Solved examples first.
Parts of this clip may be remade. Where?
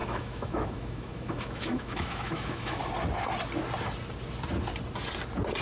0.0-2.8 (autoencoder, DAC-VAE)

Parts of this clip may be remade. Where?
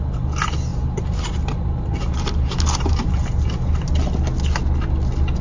0.7-3.9 (vocoder, BigVGAN v2)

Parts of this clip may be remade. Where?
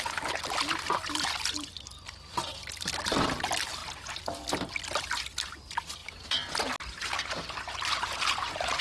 none